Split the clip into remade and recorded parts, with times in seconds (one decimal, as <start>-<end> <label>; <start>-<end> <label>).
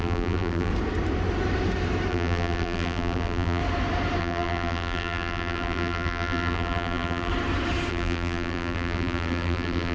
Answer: 0.0-0.7 remade; 0.7-2.1 recorded; 2.1-3.6 remade; 3.6-4.2 recorded; 4.2-7.3 remade; 7.3-7.9 recorded; 7.9-9.9 remade